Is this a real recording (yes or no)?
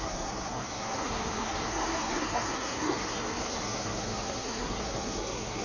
no